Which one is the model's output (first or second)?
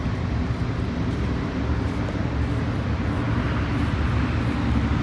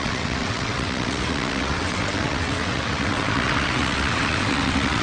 second